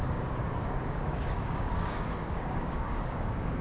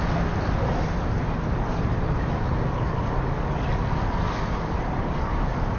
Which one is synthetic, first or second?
first